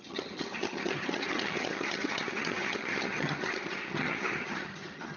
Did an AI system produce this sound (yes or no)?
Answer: yes